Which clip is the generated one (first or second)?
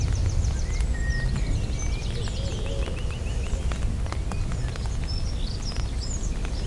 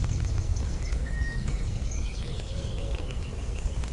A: second